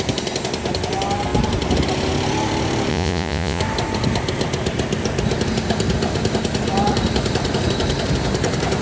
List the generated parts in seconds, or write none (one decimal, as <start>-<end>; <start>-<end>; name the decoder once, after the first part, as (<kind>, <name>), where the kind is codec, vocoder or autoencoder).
2.9-3.6 (vocoder, Vocos)